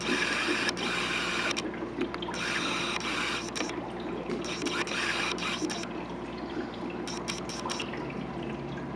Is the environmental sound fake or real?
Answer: real